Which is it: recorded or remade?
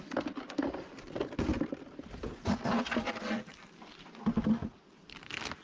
recorded